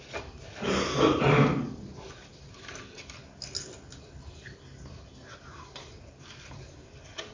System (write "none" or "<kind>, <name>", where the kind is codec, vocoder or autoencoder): none